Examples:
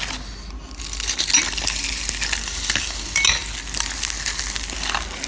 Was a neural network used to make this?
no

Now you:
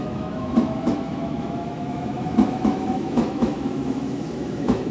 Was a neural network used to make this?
yes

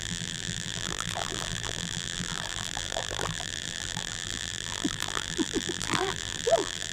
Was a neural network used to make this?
yes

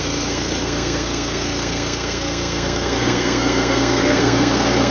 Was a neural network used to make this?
yes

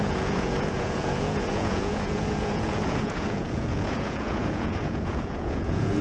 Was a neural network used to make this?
yes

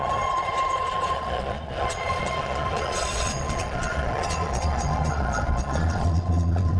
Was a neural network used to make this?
yes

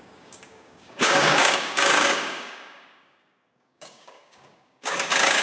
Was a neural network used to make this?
yes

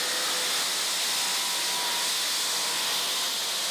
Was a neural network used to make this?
no